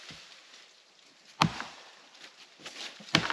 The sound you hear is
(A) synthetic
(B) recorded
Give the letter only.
B